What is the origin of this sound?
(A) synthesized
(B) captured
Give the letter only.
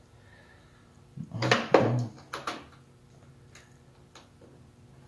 B